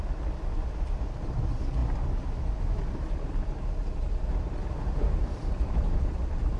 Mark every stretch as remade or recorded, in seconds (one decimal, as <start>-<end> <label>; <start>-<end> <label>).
0.0-4.6 recorded; 4.6-6.6 remade